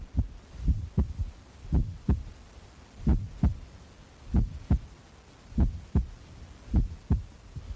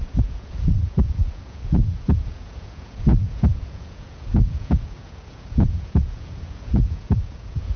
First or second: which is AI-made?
second